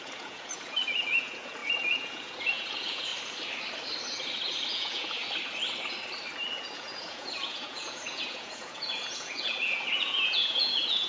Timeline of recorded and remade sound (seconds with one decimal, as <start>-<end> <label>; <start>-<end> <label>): 0.0-3.1 remade; 3.1-4.7 recorded; 4.7-5.2 remade; 5.2-6.6 recorded; 6.6-11.1 remade